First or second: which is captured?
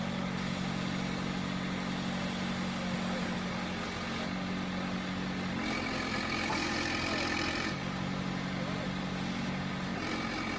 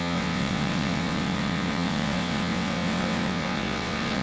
first